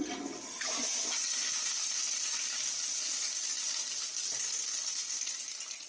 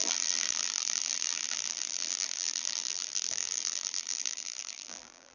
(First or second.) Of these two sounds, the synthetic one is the second